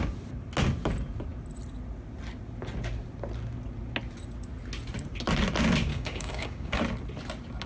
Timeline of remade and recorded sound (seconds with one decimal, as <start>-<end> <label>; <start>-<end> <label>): 0.0-5.9 recorded; 5.9-6.8 remade; 6.8-7.7 recorded

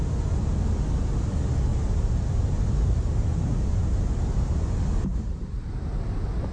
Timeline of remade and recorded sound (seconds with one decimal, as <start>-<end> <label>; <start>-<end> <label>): 0.0-1.7 recorded; 1.7-4.6 remade; 4.6-6.5 recorded